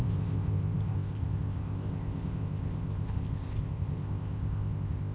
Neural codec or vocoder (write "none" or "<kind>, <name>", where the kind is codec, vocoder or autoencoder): codec, ZipCodec